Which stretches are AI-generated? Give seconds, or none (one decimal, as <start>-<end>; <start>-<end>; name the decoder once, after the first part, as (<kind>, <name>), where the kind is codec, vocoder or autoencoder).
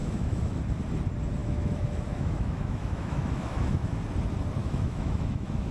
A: 0.0-0.6 (autoencoder, DAC-VAE); 1.4-4.0; 4.6-5.7